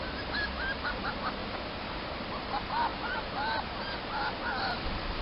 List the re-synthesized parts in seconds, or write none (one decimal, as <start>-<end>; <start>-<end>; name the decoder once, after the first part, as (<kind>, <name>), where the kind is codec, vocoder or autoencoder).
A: none